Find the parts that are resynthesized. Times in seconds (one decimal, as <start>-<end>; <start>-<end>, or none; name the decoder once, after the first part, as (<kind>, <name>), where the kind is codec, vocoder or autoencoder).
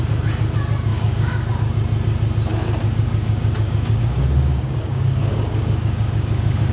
0.9-1.5 (codec, DAC); 2.5-6.7